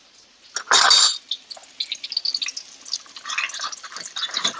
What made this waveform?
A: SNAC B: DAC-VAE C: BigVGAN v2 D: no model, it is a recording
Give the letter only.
D